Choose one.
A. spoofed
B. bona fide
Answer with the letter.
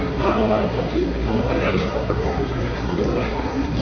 A